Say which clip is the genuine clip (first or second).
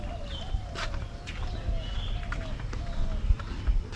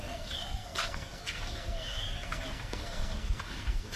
first